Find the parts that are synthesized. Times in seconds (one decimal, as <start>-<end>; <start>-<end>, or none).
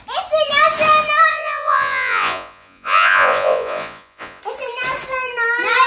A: 1.3-4.4